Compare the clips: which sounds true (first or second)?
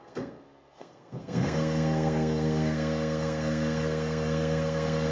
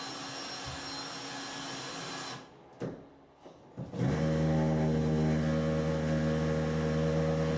second